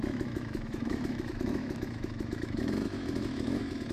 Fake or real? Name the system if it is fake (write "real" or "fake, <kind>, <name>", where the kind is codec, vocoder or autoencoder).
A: fake, autoencoder, DAC-VAE